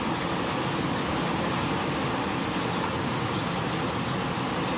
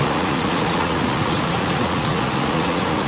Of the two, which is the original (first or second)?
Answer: first